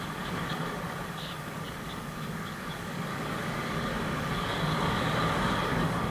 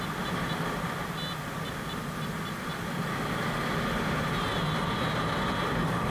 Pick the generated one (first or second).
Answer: first